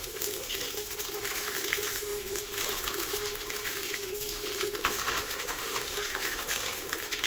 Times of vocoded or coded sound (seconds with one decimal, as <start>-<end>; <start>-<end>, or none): 0.0-7.3